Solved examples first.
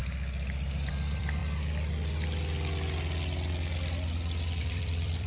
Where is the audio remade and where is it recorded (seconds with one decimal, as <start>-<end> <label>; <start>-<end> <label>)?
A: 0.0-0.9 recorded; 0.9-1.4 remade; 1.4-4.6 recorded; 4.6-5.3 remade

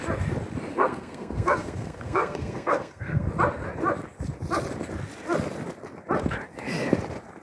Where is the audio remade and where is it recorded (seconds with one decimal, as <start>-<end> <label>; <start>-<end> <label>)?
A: 0.0-0.7 recorded; 0.7-3.3 remade; 3.3-7.4 recorded

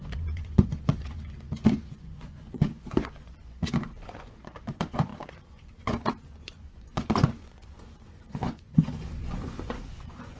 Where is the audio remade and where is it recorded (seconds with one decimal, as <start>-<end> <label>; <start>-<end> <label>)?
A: 0.0-10.4 remade

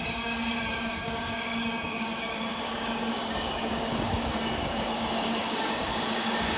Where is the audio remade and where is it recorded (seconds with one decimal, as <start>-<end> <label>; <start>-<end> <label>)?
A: 0.0-6.6 remade